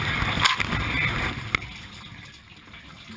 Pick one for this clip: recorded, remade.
recorded